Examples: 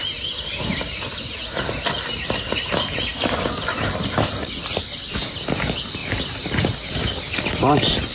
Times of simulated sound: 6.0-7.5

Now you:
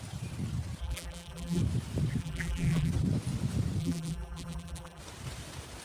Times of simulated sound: 0.8-1.6; 2.2-2.9; 3.8-5.0

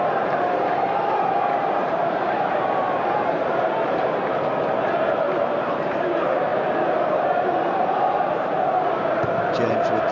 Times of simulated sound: 0.0-8.5; 9.1-10.1

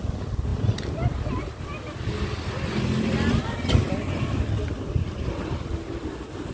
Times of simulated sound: none

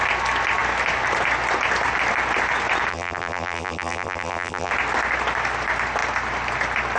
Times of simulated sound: 2.9-4.7

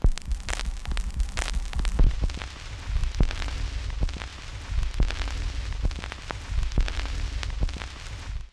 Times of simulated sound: 3.0-3.6